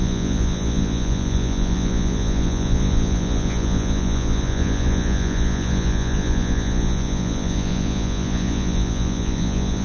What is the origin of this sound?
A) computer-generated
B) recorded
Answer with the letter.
A